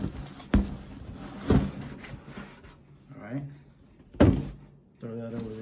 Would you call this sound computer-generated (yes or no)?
no